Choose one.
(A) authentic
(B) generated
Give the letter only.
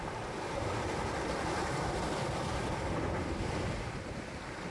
B